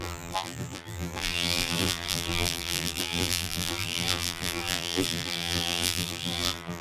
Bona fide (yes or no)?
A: no